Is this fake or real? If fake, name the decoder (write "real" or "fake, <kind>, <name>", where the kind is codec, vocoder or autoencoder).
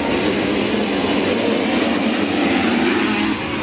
real